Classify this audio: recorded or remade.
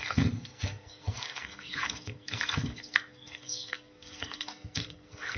remade